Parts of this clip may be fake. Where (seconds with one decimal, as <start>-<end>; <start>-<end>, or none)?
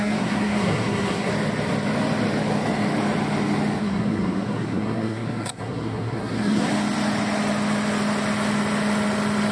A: 0.0-1.3; 3.8-6.7